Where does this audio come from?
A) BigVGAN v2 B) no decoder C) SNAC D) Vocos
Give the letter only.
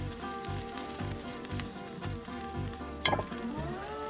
A